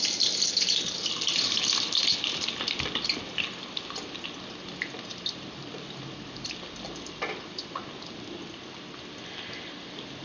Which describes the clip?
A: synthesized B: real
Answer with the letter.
B